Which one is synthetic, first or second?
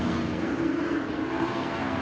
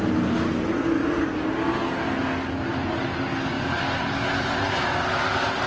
first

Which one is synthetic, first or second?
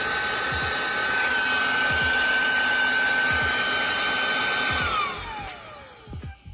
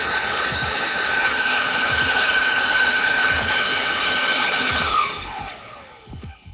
second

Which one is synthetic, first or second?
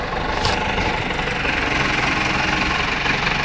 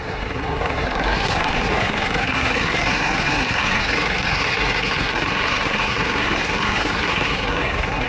second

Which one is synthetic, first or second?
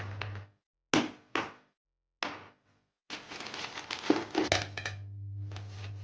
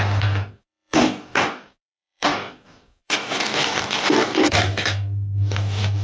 second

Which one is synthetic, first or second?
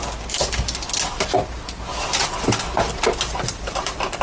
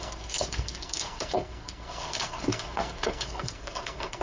second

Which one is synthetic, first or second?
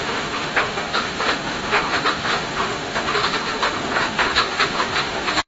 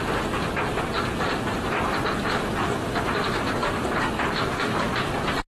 first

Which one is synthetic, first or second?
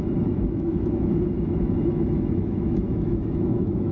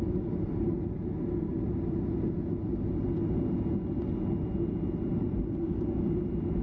first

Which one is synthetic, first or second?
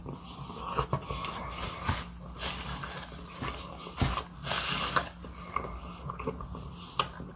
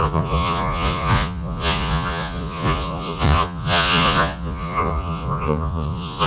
second